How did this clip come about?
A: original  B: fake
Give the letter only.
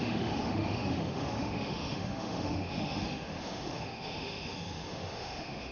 B